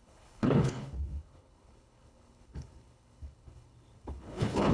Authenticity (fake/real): fake